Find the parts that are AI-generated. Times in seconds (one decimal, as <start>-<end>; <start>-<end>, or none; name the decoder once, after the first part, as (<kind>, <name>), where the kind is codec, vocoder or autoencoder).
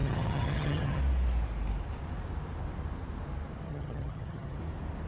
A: 0.0-1.0 (vocoder, HiFi-GAN); 3.7-4.6